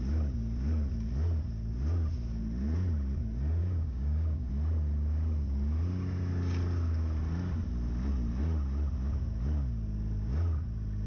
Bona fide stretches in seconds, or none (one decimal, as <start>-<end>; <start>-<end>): 0.0-3.6; 4.5-11.1